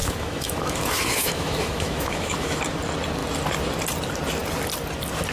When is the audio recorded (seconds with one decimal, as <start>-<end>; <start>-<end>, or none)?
2.6-5.3